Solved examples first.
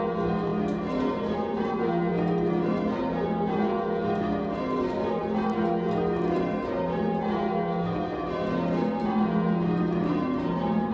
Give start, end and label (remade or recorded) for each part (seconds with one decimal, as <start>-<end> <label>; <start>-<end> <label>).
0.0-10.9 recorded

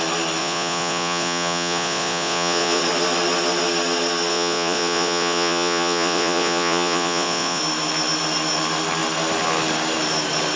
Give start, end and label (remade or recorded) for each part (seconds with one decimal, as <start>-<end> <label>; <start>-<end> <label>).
0.0-0.4 recorded; 0.4-2.8 remade; 2.8-4.3 recorded; 4.3-7.6 remade; 7.6-10.6 recorded

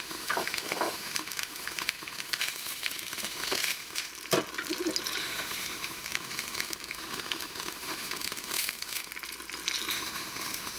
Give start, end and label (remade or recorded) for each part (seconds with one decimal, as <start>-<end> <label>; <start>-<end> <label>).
0.0-4.1 remade; 4.1-5.2 recorded; 5.2-9.1 remade; 9.1-9.9 recorded; 9.9-10.8 remade

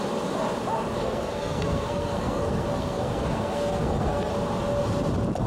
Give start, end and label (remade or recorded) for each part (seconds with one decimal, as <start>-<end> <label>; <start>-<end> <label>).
0.0-1.0 recorded; 1.0-4.3 remade; 4.3-5.5 recorded

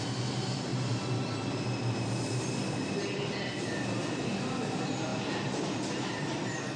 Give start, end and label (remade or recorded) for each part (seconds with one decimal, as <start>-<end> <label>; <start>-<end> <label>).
0.0-6.8 recorded

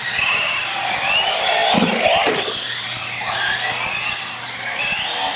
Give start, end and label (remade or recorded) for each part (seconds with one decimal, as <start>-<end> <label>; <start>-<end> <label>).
0.0-5.4 recorded